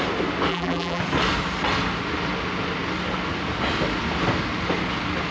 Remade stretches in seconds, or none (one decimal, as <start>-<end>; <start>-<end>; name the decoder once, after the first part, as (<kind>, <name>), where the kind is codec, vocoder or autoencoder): 0.5-1.0 (vocoder, BigVGAN v2)